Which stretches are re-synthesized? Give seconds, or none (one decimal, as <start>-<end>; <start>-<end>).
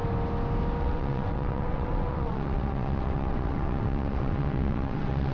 0.8-5.3